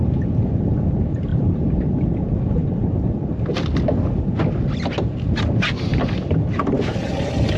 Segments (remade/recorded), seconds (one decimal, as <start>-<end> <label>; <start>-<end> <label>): 0.0-1.3 recorded; 1.3-1.9 remade; 1.9-7.6 recorded